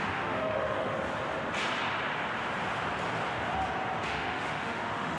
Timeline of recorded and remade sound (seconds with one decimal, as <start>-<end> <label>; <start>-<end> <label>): 0.0-0.9 remade; 0.9-4.0 recorded; 4.0-5.2 remade